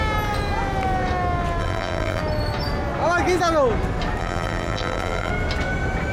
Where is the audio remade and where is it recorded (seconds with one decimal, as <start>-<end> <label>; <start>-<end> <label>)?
0.0-1.6 recorded; 1.6-2.2 remade; 2.2-4.2 recorded; 4.2-5.3 remade; 5.3-6.1 recorded